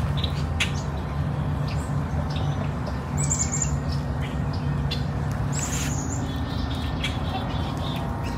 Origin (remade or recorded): recorded